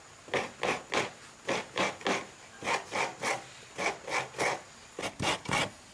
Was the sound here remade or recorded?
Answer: recorded